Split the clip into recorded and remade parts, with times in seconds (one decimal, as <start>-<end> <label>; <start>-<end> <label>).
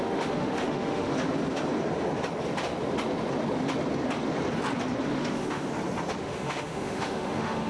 0.0-1.1 remade; 1.1-5.1 recorded; 5.1-5.7 remade; 5.7-6.2 recorded; 6.2-7.7 remade